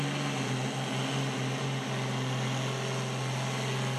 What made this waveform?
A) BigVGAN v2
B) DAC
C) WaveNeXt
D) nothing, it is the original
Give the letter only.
D